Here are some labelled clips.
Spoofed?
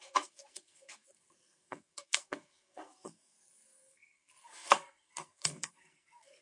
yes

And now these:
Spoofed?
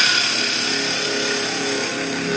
no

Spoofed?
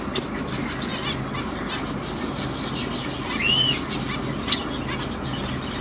no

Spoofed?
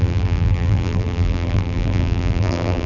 yes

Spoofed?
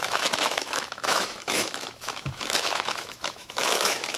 yes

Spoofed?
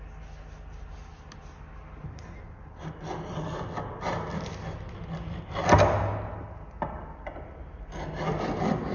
no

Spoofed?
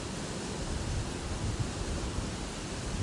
no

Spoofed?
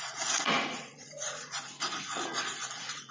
yes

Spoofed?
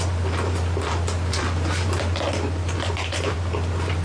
yes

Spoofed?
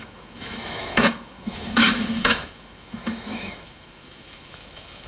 yes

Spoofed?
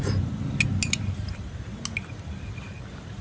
no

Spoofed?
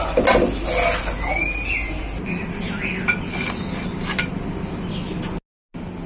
no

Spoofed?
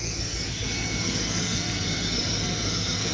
yes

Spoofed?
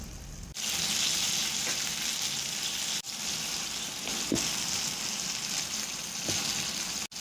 no